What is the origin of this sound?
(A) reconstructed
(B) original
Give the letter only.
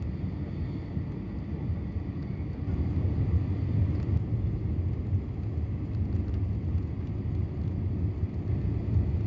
B